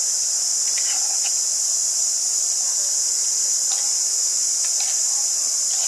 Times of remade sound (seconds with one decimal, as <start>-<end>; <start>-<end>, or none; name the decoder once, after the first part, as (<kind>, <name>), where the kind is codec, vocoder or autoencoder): none